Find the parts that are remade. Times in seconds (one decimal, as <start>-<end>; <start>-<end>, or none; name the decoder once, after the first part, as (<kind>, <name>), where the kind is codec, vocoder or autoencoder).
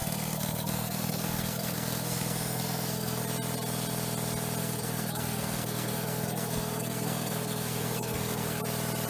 0.0-3.2 (codec, SNAC); 4.6-8.6